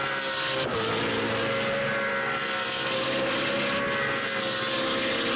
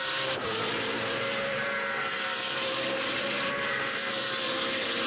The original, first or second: first